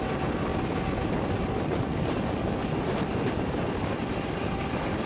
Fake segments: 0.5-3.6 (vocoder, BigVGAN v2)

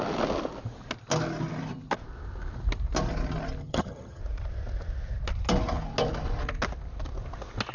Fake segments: 3.6-4.2 (vocoder, HiFi-GAN)

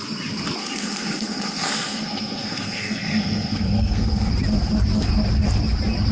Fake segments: 0.6-4.3 (codec, SNAC)

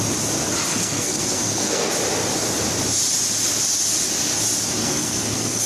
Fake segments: 0.7-1.9 (codec, SNAC); 4.8-5.7

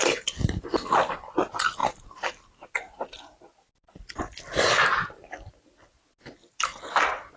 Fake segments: none